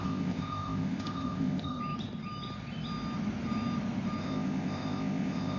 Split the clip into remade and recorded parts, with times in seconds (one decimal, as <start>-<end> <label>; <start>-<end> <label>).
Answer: 0.0-1.8 remade; 1.8-4.2 recorded; 4.2-5.6 remade